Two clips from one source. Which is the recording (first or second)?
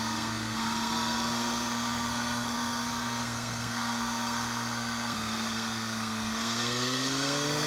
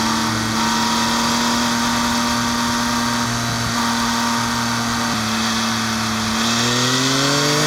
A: second